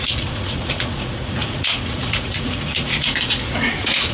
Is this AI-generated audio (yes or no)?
yes